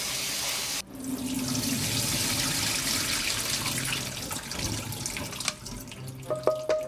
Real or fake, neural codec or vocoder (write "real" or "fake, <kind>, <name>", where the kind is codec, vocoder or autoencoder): real